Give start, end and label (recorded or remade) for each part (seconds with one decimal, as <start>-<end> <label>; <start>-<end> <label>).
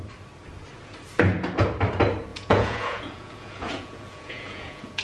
0.0-2.3 recorded; 2.3-5.0 remade